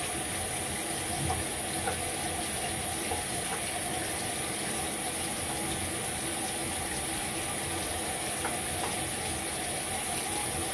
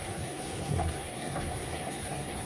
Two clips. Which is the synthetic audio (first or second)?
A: second